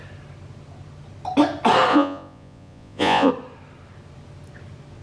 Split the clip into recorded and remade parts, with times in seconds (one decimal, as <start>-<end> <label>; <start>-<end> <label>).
0.0-1.9 recorded; 1.9-3.3 remade; 3.3-5.0 recorded